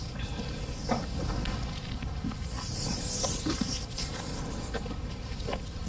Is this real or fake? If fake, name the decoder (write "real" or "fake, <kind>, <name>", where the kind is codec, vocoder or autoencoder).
real